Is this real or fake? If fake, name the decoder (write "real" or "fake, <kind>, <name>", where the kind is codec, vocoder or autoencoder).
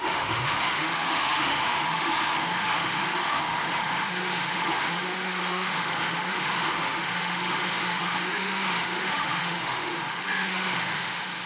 fake, autoencoder, DAC-VAE